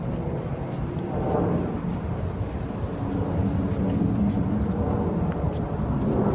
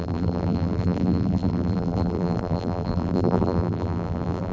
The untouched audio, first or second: first